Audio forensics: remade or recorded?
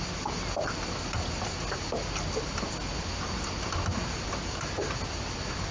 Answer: recorded